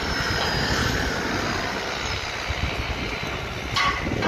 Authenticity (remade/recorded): recorded